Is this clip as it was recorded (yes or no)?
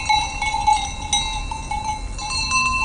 yes